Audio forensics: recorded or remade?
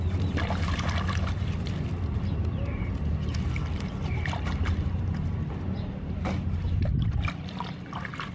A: recorded